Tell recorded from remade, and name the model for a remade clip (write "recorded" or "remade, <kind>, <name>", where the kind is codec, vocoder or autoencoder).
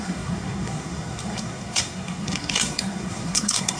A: remade, codec, SNAC